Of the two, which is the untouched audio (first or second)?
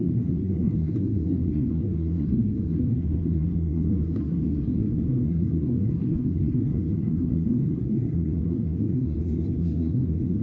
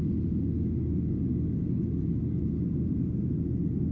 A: second